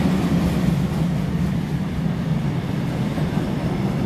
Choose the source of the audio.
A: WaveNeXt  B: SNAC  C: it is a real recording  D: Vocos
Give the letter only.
C